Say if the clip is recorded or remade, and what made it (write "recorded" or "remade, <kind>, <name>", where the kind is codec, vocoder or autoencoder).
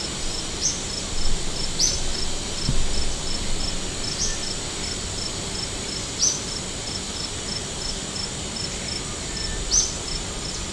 recorded